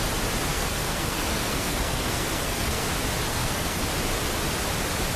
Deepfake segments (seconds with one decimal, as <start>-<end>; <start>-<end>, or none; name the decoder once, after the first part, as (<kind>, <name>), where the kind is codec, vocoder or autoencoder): 0.5-2.9 (codec, SNAC); 3.3-3.8